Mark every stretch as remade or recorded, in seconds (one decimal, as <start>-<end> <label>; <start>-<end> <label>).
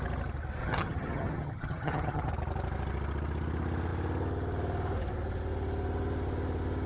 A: 0.0-0.6 recorded; 0.6-2.3 remade; 2.3-6.9 recorded